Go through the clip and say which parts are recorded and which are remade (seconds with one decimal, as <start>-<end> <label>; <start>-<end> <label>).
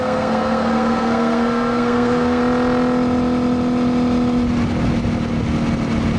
0.0-2.4 remade; 2.4-6.2 recorded